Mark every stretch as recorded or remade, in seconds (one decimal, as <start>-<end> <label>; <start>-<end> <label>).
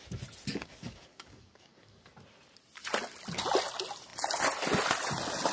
0.0-0.5 recorded; 0.5-2.1 remade; 2.1-5.5 recorded